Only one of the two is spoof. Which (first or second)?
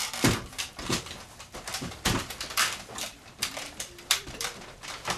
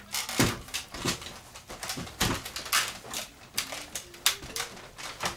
first